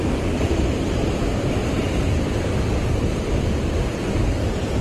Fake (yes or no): yes